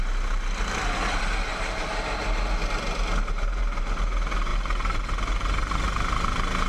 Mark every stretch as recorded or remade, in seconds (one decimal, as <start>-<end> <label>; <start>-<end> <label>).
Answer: 0.0-6.7 recorded